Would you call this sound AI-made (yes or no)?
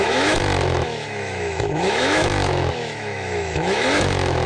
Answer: yes